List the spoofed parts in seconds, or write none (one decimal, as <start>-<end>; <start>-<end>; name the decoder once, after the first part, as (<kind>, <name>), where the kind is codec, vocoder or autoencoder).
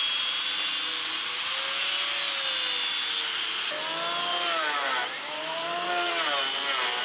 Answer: 4.3-6.1 (vocoder, BigVGAN v2)